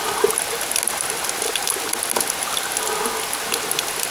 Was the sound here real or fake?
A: real